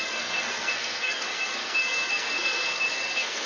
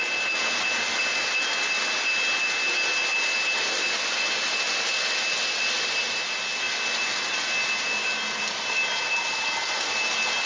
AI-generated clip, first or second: first